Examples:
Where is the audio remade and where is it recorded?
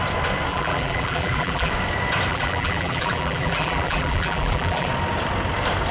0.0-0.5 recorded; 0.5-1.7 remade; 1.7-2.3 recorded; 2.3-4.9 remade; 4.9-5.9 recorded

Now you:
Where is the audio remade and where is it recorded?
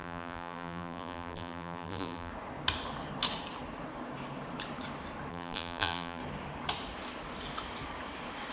0.0-2.3 remade; 2.3-5.3 recorded; 5.3-6.2 remade; 6.2-8.5 recorded